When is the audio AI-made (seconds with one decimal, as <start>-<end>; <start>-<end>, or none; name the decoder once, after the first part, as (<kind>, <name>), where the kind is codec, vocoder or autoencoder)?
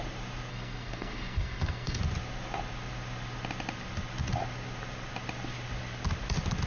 0.5-2.0 (codec, SNAC)